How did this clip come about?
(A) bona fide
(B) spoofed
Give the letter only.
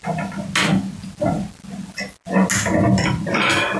A